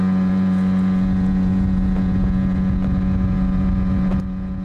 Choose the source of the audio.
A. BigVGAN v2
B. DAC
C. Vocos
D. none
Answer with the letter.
C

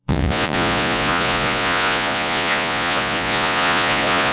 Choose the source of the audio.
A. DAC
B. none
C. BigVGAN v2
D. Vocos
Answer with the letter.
D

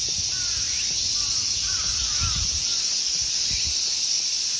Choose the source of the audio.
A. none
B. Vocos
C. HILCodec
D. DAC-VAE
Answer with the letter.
A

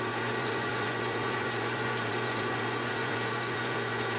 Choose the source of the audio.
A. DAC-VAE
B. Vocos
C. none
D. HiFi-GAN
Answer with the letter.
B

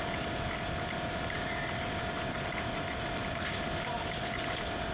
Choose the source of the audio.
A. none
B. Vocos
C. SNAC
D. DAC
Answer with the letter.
A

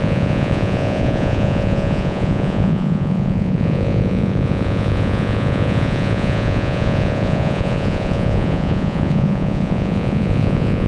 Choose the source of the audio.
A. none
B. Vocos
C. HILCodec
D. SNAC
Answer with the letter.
B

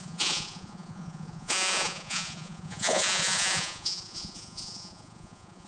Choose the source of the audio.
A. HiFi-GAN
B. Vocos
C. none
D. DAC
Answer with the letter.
B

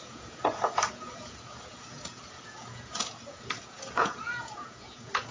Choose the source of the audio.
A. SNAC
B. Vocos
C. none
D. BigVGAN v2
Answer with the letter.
B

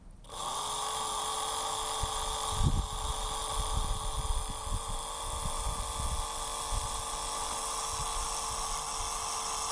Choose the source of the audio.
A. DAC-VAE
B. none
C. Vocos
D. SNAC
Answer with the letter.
B